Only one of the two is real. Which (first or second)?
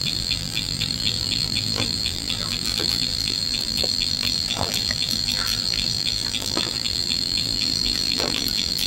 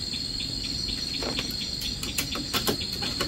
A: second